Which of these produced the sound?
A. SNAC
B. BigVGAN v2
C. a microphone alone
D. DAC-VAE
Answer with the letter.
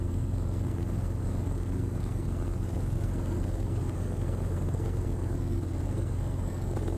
A